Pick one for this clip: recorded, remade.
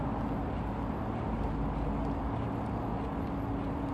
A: recorded